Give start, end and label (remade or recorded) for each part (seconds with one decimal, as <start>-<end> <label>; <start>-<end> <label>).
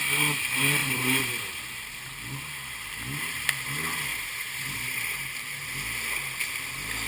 0.0-0.8 recorded; 0.8-2.0 remade; 2.0-4.1 recorded; 4.1-5.3 remade; 5.3-7.1 recorded